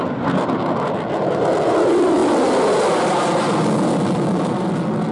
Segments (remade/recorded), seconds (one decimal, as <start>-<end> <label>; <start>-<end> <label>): 0.0-5.1 recorded

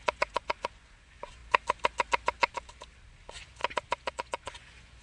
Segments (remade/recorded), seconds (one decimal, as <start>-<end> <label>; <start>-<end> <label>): 0.0-1.4 remade; 1.4-3.1 recorded; 3.1-3.6 remade; 3.6-4.1 recorded; 4.1-5.0 remade